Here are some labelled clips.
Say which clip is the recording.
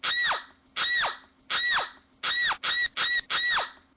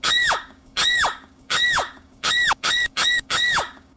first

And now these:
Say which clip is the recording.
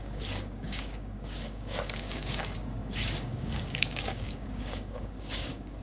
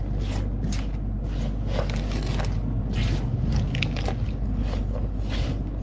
second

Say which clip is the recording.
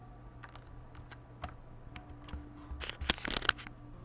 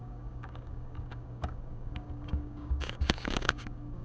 first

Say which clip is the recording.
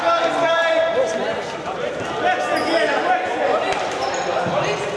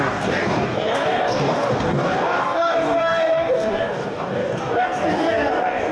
first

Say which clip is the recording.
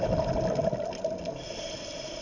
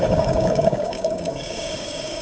first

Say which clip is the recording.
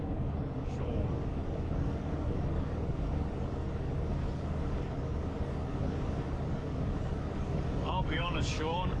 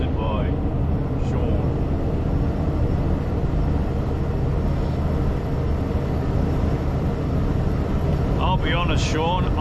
second